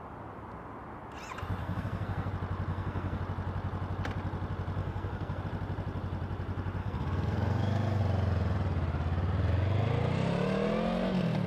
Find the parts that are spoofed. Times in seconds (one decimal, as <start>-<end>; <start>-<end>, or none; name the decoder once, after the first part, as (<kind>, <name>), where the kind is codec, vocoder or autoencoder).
1.6-2.3 (codec, SNAC); 2.7-3.2; 4.8-5.4; 6.8-8.0